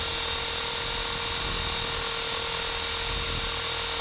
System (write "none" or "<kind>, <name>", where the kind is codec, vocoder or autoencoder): none